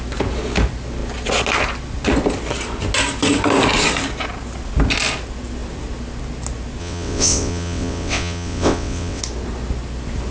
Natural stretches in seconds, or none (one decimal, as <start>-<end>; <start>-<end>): 0.0-6.8; 9.2-10.3

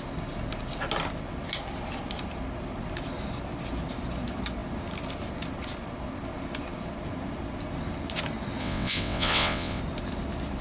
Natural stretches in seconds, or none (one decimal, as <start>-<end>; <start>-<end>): 0.0-8.6; 9.8-10.6

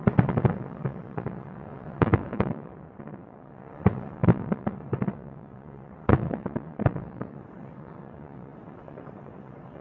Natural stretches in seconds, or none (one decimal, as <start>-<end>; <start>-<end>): none

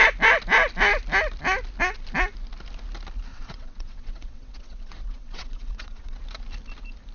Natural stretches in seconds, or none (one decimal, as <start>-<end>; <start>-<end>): 0.0-3.3; 6.2-7.1

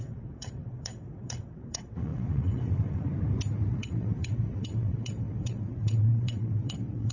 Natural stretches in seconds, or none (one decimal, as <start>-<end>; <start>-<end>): 3.1-3.7

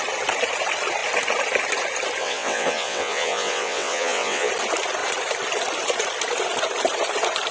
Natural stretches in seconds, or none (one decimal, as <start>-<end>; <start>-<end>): 0.0-2.2; 4.5-7.5